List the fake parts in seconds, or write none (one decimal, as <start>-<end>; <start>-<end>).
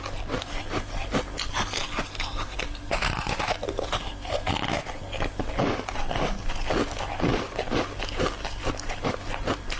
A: none